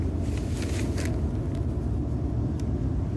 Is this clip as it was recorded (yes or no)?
yes